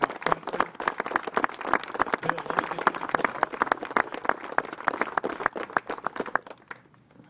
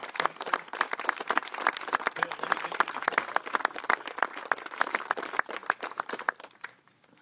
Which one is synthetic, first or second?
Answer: second